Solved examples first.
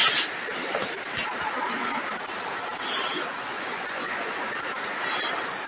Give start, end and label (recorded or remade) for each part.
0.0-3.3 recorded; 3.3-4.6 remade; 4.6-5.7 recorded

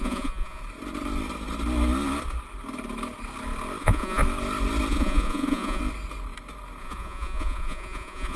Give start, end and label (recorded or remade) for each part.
0.0-0.6 remade; 0.6-3.8 recorded; 3.8-4.2 remade; 4.2-4.9 recorded; 4.9-5.8 remade; 5.8-6.8 recorded; 6.8-8.4 remade

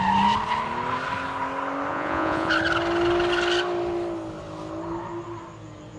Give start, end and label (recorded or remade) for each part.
0.0-1.9 recorded; 1.9-2.5 remade; 2.5-6.0 recorded